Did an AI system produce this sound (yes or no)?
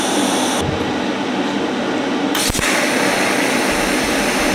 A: no